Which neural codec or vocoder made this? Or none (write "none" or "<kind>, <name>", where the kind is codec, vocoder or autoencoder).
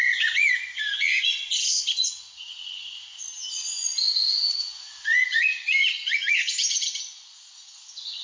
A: vocoder, Vocos